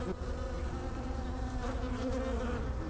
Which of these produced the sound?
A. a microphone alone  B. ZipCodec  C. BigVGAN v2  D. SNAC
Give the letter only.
A